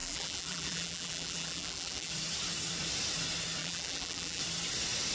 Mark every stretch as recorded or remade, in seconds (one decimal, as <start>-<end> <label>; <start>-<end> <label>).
0.0-2.1 remade; 2.1-3.6 recorded; 3.6-4.4 remade; 4.4-5.1 recorded